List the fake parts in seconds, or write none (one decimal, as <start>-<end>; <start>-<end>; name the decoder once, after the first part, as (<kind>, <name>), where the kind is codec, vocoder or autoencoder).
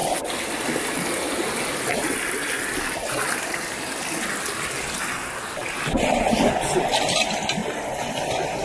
none